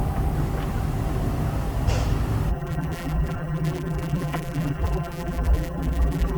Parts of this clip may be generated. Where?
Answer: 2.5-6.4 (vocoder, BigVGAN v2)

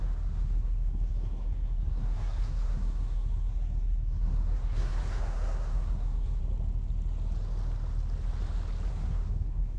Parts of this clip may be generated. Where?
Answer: 0.0-6.4 (codec, SNAC); 8.9-9.8